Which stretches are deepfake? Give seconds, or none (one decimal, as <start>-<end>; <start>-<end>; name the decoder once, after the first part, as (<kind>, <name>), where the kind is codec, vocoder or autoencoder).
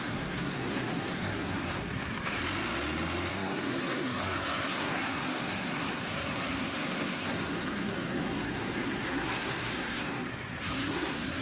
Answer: 0.0-2.4 (codec, SNAC); 3.3-11.4